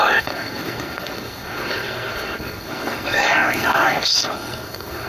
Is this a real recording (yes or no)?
no